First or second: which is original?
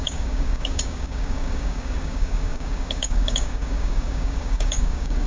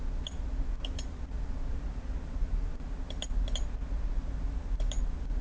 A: second